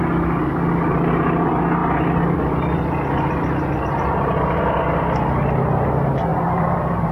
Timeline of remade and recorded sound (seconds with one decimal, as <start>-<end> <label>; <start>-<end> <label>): 0.0-6.3 recorded; 6.3-7.1 remade